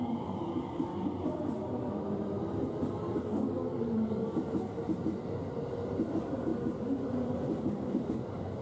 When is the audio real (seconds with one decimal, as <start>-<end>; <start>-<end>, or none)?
0.9-3.0; 4.8-6.1